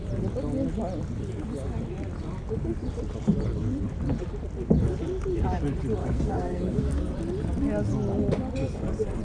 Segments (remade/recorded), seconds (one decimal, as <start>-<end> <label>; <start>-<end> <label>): 0.0-6.0 recorded; 6.0-7.1 remade; 7.1-9.2 recorded